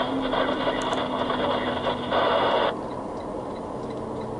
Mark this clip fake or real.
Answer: real